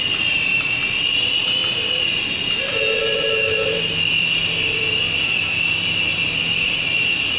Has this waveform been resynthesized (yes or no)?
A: yes